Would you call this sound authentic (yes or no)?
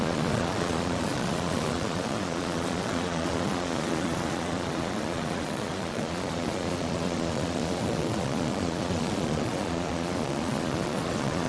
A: no